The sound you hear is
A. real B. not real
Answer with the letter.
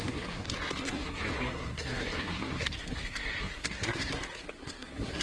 B